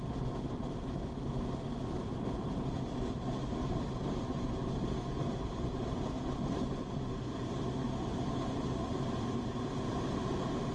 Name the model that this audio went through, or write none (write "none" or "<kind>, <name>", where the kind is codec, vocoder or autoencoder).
none